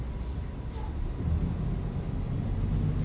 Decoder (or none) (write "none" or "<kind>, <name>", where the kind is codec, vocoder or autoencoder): none